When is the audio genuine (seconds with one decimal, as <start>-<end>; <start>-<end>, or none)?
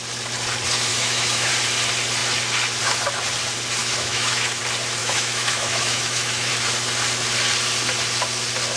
0.0-0.9; 1.5-3.8; 4.6-5.0; 6.5-8.8